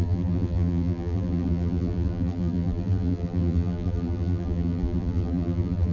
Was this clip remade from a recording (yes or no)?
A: yes